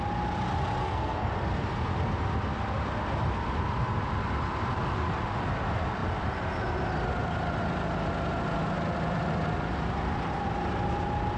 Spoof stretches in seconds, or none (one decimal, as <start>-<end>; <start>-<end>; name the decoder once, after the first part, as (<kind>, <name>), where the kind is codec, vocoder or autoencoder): 0.8-1.3 (codec, SNAC)